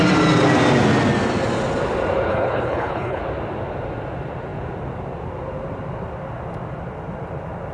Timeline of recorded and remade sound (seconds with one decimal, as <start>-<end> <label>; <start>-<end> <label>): 0.0-2.3 recorded; 2.3-3.2 remade; 3.2-7.7 recorded